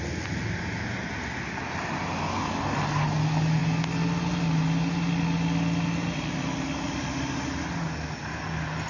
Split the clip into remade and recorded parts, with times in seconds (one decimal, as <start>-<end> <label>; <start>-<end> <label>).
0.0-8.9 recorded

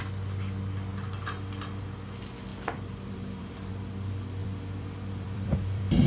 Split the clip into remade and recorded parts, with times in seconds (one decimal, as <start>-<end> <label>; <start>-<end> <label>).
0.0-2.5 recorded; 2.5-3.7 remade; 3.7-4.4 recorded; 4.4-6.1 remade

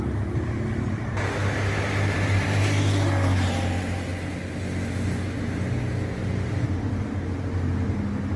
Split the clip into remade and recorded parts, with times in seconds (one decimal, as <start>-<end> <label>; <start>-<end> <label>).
0.0-8.4 recorded

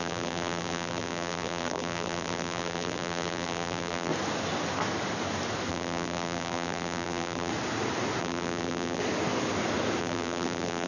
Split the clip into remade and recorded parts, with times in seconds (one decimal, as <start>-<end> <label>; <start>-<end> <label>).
0.0-4.1 remade; 4.1-5.7 recorded; 5.7-7.5 remade; 7.5-8.2 recorded; 8.2-9.0 remade; 9.0-10.0 recorded; 10.0-10.9 remade